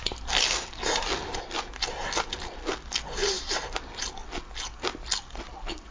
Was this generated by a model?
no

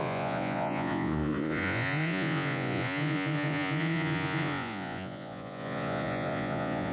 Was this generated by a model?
yes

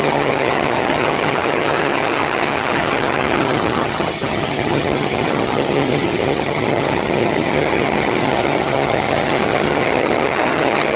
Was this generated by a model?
yes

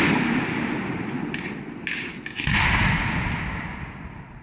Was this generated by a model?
no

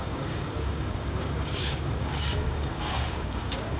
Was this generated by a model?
yes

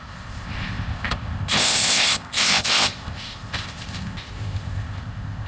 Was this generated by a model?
yes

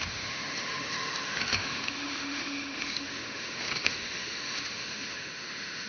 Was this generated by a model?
yes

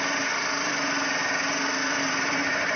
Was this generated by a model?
no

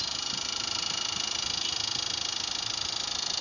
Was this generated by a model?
no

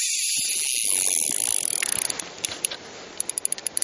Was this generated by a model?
no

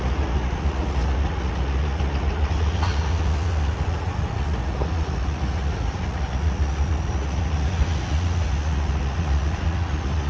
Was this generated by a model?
yes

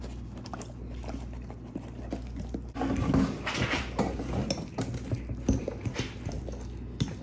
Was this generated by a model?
no